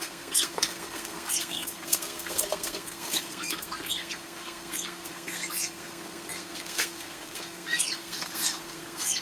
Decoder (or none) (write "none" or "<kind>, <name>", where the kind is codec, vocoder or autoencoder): codec, SNAC